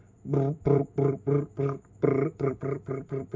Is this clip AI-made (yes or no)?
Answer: no